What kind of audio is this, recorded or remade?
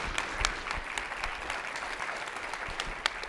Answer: recorded